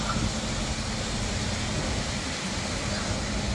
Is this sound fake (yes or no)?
no